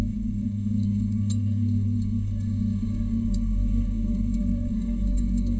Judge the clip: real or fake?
fake